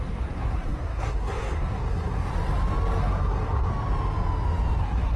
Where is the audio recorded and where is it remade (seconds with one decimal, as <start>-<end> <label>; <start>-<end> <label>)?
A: 0.0-2.3 remade; 2.3-3.0 recorded; 3.0-3.7 remade; 3.7-4.8 recorded; 4.8-5.2 remade